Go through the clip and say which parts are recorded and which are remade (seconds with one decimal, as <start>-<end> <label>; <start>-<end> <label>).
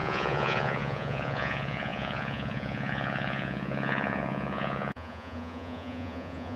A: 0.0-6.6 remade